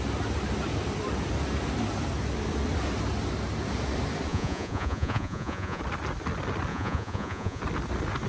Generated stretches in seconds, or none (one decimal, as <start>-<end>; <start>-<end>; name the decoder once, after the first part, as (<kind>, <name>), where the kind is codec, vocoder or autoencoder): 4.3-5.8 (vocoder, Vocos); 6.7-7.6